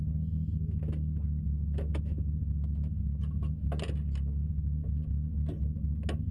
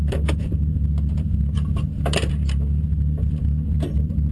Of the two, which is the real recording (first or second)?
first